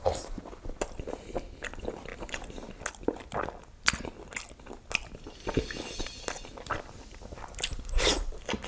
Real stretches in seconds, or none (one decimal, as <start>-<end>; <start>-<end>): 0.0-8.7